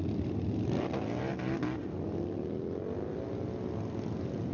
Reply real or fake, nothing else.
real